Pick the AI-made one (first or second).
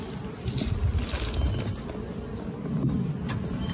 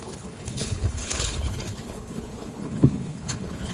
second